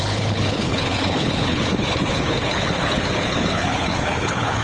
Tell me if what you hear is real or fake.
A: fake